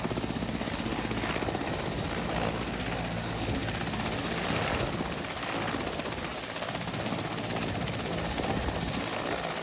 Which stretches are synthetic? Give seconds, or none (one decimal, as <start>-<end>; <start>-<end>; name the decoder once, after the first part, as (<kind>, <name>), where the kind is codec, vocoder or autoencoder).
none